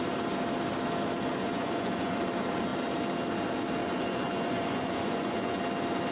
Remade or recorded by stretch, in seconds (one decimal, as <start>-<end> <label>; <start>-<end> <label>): 0.0-1.4 recorded; 1.4-2.2 remade; 2.2-3.8 recorded; 3.8-5.6 remade; 5.6-6.1 recorded